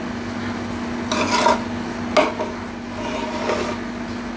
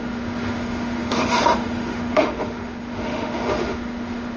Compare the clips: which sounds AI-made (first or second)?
second